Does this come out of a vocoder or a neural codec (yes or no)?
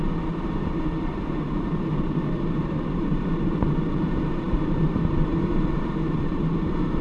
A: yes